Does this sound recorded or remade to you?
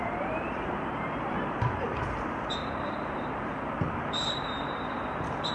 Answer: remade